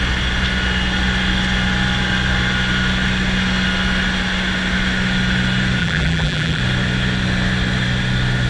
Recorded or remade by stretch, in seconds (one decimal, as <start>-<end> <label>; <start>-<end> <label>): 0.0-5.8 recorded; 5.8-6.6 remade; 6.6-8.5 recorded